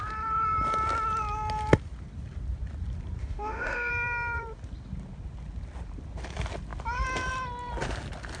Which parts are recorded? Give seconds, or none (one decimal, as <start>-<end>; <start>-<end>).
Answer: 0.0-3.2; 3.9-8.4